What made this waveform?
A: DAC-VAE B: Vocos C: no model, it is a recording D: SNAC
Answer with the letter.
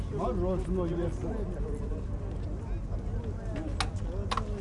C